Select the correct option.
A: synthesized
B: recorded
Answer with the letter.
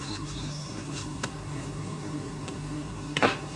A